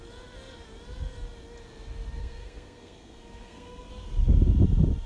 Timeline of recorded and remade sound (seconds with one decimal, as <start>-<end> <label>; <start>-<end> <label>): 0.0-2.2 recorded; 2.2-3.9 remade; 3.9-5.1 recorded